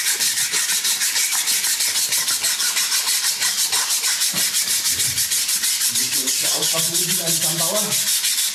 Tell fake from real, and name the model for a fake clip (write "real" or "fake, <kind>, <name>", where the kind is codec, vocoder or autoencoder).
real